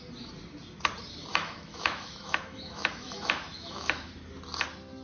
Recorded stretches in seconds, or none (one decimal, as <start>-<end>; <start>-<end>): 0.0-1.3; 4.1-5.0

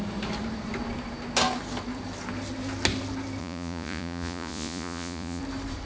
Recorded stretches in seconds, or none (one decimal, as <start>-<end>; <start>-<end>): 0.0-3.4; 5.4-5.9

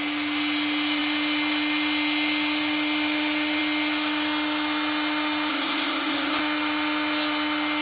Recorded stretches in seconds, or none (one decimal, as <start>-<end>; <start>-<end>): 0.0-5.5; 6.4-7.8

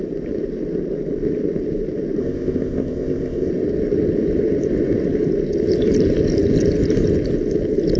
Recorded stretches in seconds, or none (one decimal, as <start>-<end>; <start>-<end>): 0.0-2.2; 3.5-8.0

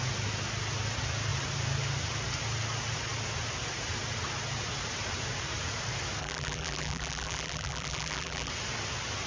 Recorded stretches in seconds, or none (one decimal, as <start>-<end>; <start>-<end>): 0.0-6.2; 8.5-9.3

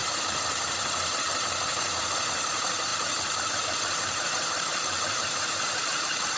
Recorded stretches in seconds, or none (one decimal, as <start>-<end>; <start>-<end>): none